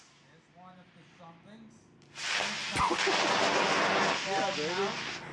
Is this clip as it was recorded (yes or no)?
yes